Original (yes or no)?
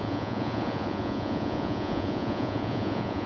no